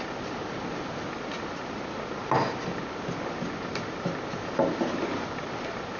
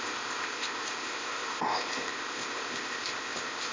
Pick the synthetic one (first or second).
second